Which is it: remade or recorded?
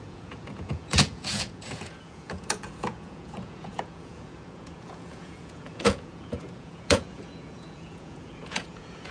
remade